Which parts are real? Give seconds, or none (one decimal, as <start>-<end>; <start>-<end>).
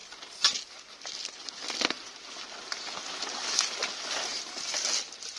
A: 0.0-5.4